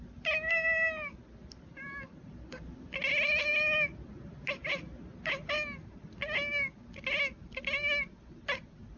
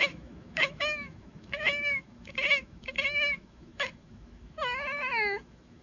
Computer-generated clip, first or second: second